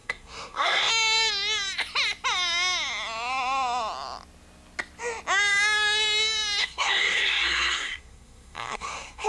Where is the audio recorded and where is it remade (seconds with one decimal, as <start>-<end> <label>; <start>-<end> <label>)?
0.0-0.9 remade; 0.9-6.6 recorded; 6.6-9.3 remade